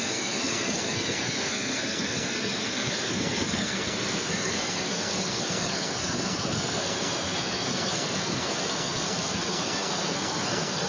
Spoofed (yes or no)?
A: yes